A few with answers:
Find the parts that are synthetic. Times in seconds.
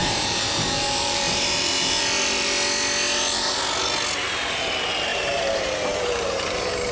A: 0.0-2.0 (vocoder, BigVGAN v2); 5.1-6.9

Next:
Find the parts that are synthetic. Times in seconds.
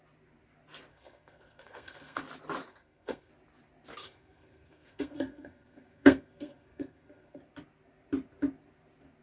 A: 0.9-2.2 (codec, SNAC); 2.7-3.3; 4.0-7.4